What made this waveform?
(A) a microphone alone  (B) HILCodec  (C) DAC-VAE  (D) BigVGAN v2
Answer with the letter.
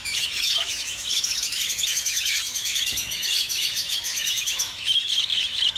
C